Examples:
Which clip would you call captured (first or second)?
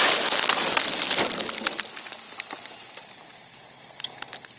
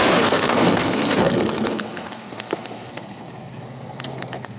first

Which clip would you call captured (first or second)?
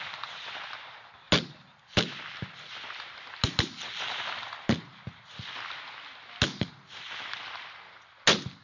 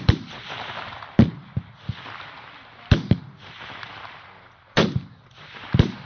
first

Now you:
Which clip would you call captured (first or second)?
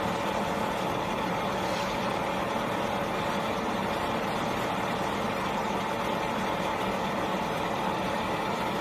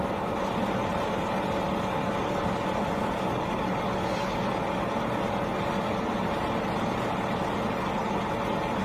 second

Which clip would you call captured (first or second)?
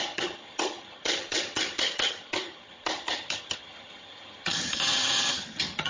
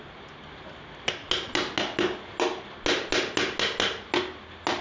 second